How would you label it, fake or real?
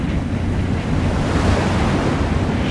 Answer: real